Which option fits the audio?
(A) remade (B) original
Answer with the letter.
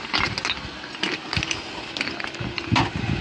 B